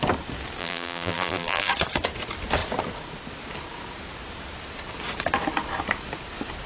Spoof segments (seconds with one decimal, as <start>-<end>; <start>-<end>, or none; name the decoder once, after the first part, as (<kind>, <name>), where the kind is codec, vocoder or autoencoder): 0.6-1.7 (vocoder, BigVGAN v2)